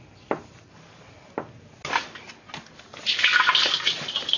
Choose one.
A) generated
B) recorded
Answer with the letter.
B